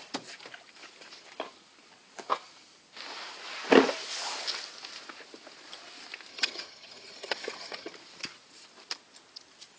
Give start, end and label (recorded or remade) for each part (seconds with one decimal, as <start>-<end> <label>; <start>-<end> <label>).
0.0-6.3 recorded; 6.3-7.9 remade; 7.9-9.8 recorded